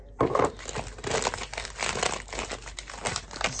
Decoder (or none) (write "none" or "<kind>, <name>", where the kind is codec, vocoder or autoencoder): none